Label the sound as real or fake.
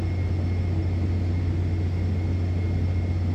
real